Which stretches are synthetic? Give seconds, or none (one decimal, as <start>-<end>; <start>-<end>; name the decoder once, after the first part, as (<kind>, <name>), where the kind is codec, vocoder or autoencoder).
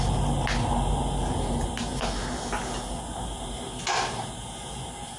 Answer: none